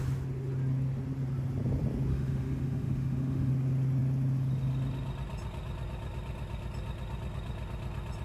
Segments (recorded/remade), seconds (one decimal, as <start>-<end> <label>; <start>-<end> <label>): 0.0-2.1 recorded; 2.1-3.5 remade; 3.5-8.2 recorded